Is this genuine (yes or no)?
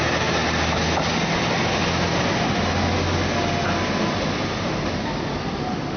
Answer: yes